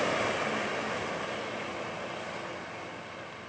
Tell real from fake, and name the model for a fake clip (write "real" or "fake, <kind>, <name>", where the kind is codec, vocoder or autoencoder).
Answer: real